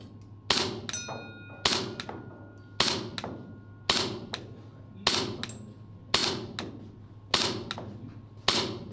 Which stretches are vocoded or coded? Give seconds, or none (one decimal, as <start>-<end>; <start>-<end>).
none